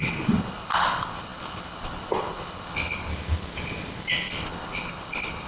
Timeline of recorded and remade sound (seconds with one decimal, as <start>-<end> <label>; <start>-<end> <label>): 0.0-3.1 remade; 3.1-4.3 recorded; 4.3-5.5 remade